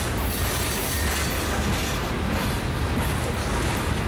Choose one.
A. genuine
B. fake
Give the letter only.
A